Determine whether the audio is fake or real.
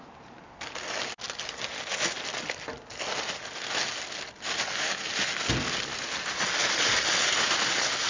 real